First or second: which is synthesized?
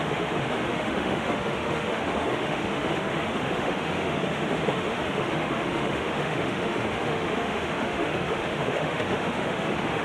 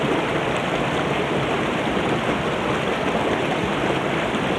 first